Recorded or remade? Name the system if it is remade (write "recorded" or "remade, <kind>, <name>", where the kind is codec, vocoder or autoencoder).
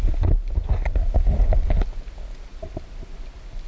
recorded